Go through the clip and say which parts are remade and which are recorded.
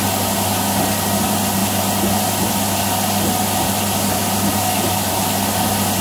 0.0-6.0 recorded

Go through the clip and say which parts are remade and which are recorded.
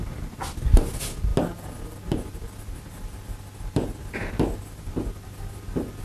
0.0-6.0 recorded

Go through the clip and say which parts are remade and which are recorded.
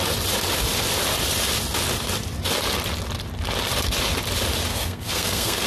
0.0-4.7 recorded; 4.7-5.7 remade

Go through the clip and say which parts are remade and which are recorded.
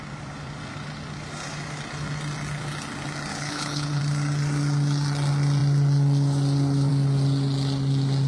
0.0-3.3 recorded; 3.3-4.0 remade; 4.0-8.3 recorded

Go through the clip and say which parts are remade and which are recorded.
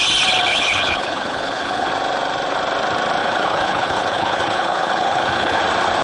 0.0-0.5 recorded; 0.5-1.9 remade; 1.9-3.2 recorded; 3.2-5.6 remade; 5.6-6.0 recorded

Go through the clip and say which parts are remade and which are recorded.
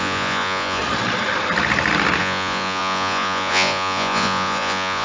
0.0-0.8 remade; 0.8-2.2 recorded; 2.2-5.0 remade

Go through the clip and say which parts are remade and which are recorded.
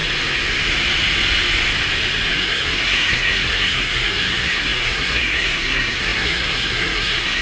0.0-2.3 recorded; 2.3-7.4 remade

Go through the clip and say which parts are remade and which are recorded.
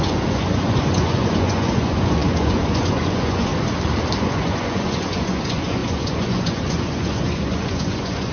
0.0-3.5 remade; 3.5-4.2 recorded; 4.2-8.3 remade